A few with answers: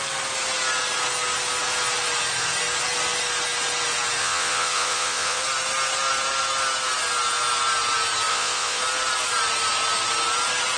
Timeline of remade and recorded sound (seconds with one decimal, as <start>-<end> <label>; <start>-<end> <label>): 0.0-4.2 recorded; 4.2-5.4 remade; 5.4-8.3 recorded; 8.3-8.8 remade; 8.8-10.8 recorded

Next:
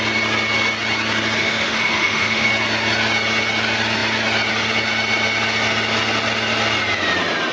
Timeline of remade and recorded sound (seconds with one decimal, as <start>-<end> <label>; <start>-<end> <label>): 0.0-1.4 recorded; 1.4-2.5 remade; 2.5-7.5 recorded

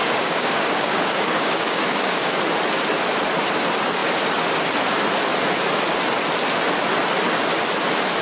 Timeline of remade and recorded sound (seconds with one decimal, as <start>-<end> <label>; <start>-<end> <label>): 0.0-2.4 remade; 2.4-8.2 recorded

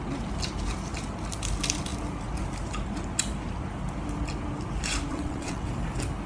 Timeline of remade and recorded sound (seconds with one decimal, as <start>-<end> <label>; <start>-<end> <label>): 0.0-5.1 recorded; 5.1-5.7 remade; 5.7-6.3 recorded

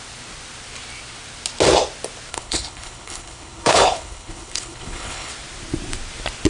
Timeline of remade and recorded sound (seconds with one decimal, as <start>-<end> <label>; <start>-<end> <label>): 0.0-2.3 recorded; 2.3-5.3 remade; 5.3-6.5 recorded

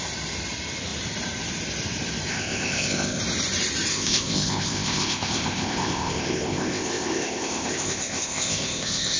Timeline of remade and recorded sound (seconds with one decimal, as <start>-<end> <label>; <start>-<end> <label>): 0.0-2.3 recorded; 2.3-3.2 remade; 3.2-3.9 recorded; 3.9-9.2 remade

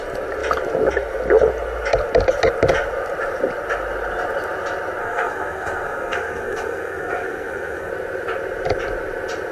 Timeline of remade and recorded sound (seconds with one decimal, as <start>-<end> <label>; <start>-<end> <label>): 0.0-5.0 recorded; 5.0-7.9 remade; 7.9-9.5 recorded